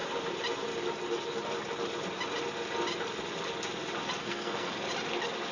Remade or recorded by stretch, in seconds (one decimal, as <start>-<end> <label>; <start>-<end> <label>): 0.0-4.2 recorded; 4.2-4.7 remade; 4.7-5.5 recorded